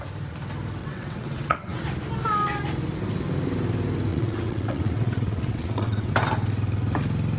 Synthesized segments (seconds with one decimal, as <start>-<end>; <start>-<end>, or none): 0.8-1.8; 4.1-6.1